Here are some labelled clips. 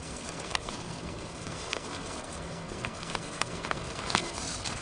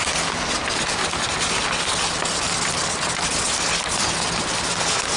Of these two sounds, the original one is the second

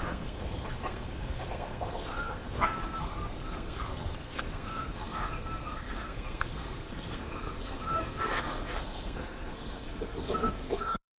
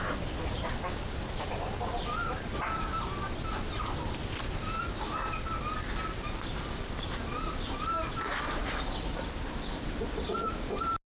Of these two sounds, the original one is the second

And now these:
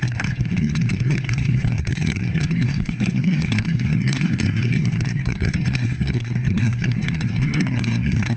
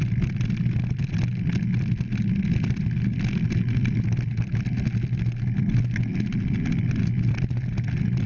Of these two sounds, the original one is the second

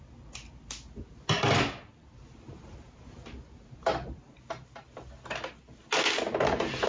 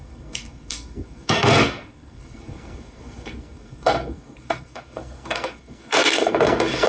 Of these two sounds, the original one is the first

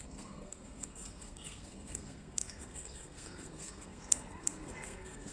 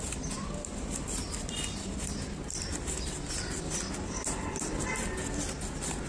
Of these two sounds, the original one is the second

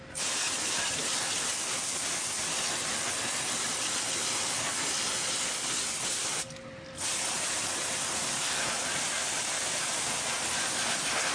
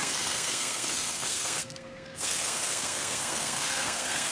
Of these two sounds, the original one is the first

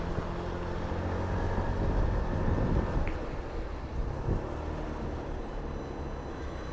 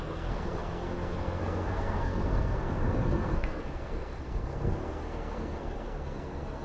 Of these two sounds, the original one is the first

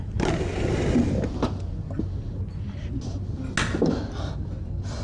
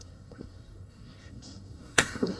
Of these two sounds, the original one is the first